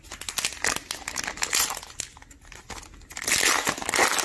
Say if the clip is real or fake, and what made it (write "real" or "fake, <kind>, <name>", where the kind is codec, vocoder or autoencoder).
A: real